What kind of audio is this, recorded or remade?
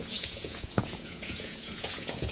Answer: remade